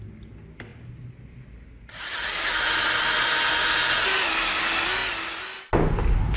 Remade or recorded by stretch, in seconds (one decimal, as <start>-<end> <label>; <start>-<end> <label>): 0.0-6.4 recorded